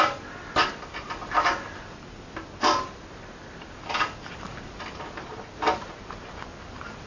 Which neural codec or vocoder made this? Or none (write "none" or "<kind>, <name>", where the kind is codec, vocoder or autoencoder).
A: none